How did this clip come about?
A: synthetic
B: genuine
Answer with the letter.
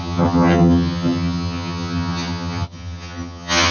A